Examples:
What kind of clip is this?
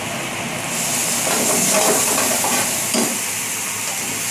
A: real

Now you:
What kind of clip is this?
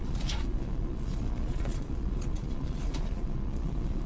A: fake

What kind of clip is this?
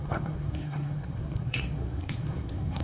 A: fake